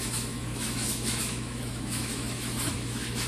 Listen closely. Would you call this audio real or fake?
fake